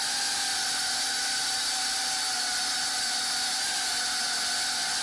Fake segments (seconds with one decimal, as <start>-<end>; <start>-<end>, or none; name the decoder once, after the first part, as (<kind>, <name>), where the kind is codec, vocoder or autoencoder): none